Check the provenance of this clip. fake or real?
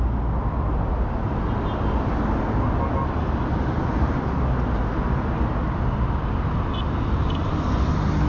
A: real